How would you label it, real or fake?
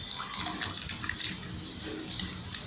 real